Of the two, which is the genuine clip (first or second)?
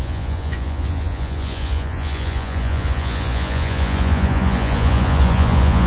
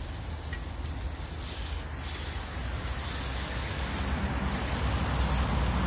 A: second